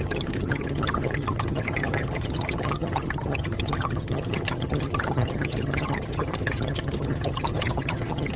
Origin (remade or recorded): remade